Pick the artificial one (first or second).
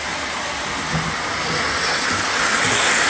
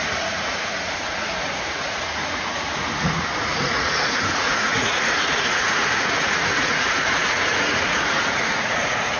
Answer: second